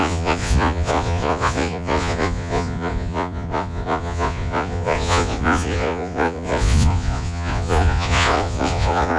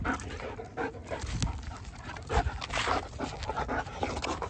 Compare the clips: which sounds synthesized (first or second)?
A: first